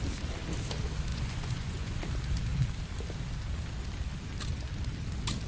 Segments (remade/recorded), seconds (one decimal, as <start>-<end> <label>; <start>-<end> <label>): 0.0-1.1 recorded; 1.1-2.0 remade; 2.0-5.5 recorded